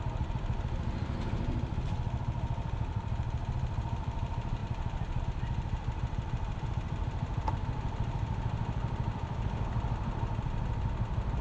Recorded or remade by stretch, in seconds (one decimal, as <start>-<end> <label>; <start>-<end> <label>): 0.0-11.4 remade